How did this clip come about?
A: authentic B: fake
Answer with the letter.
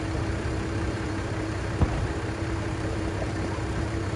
B